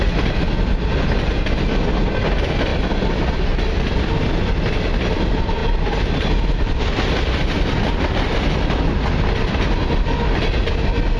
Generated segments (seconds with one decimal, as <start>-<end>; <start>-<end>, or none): 5.6-6.3